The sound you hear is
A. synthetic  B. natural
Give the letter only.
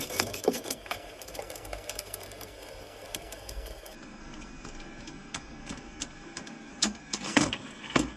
A